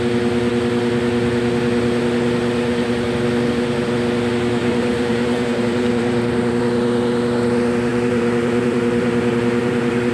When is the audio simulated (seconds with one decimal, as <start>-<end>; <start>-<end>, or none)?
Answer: 4.6-6.6; 7.9-10.1